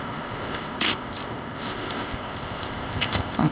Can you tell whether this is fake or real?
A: fake